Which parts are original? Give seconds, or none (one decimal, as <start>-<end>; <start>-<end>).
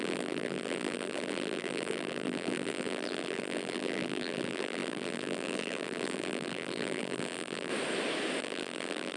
7.7-8.4